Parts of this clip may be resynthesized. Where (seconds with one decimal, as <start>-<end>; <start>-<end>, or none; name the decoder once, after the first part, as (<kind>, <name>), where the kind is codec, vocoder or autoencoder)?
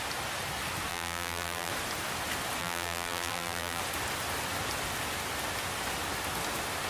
0.9-1.7 (vocoder, BigVGAN v2); 2.6-3.8